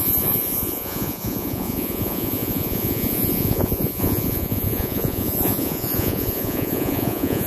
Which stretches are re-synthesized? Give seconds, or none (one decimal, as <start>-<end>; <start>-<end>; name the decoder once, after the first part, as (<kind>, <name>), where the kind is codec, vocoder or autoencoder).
0.0-7.5 (vocoder, Vocos)

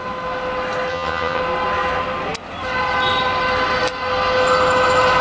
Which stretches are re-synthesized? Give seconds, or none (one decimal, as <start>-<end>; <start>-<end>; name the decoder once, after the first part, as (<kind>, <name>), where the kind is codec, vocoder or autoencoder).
0.9-1.4 (vocoder, HiFi-GAN)

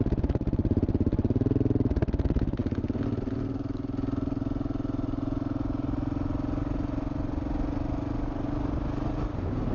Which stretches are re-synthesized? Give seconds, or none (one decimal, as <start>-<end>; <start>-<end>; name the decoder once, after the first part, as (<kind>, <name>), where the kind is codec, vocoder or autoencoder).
none

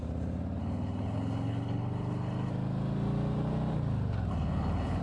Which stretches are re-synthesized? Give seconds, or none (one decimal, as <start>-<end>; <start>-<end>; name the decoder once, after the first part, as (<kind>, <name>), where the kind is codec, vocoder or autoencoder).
0.6-2.5 (codec, HILCodec); 4.3-5.0